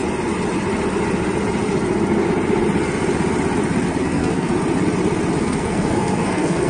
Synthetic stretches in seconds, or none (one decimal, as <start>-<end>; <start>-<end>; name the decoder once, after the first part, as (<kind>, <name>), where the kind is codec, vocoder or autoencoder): 4.0-4.5 (codec, SNAC); 5.4-6.7